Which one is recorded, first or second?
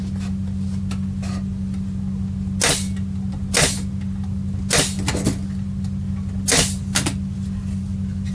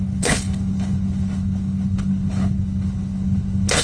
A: first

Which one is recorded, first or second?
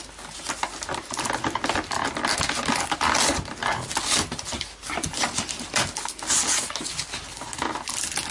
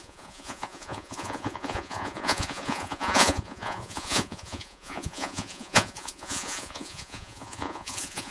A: first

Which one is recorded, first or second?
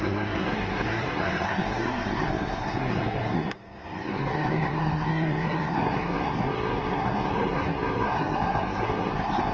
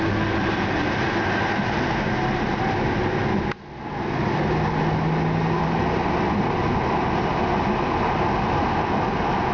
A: second